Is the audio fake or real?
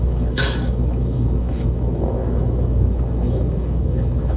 fake